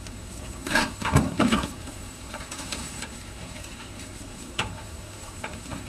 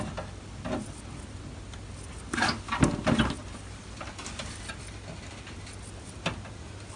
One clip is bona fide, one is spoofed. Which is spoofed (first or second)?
first